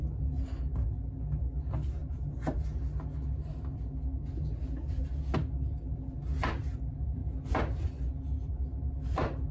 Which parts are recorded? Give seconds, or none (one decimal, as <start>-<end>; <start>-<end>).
0.0-9.5

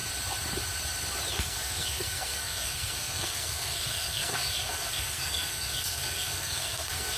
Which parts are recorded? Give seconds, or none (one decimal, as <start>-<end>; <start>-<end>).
0.0-1.3

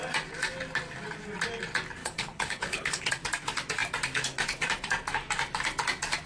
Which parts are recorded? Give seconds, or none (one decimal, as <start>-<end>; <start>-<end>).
0.0-2.0; 3.1-6.3

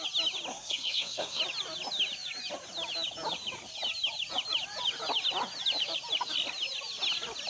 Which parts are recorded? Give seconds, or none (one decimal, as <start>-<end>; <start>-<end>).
0.0-0.5; 1.4-7.5

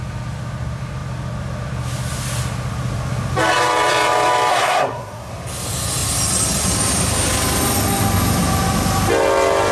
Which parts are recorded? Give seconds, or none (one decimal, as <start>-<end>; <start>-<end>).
0.0-4.5; 5.3-9.7

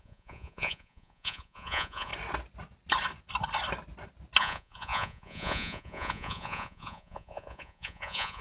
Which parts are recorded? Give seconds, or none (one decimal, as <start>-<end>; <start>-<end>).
2.1-4.4

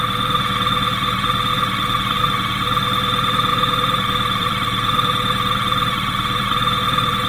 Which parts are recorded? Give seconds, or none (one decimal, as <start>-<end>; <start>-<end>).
0.0-3.5

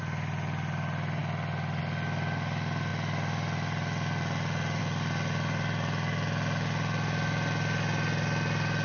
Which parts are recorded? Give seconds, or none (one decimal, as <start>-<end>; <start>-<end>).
0.0-8.8